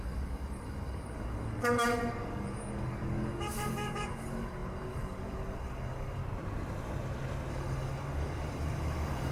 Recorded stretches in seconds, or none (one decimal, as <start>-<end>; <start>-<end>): 6.2-7.5